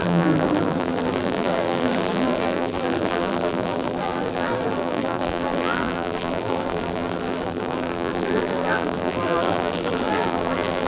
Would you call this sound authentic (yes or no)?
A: no